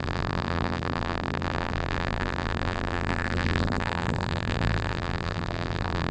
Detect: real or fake fake